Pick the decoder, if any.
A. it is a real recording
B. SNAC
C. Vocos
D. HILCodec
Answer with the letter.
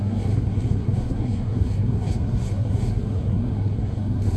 B